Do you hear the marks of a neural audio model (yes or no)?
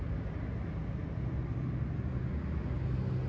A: no